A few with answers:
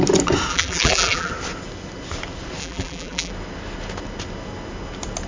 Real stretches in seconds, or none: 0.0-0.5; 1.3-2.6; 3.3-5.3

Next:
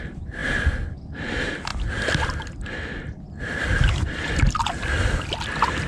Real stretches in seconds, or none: 0.0-5.9

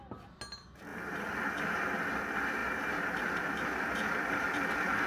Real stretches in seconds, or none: 0.0-0.9; 1.9-2.6; 4.5-5.1